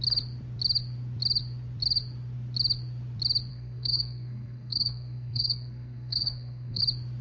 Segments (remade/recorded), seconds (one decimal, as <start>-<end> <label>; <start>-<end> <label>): 0.0-3.5 recorded; 3.5-6.8 remade; 6.8-7.2 recorded